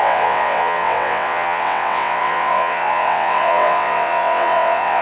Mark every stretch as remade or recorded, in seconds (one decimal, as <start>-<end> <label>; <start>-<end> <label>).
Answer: 0.0-5.0 remade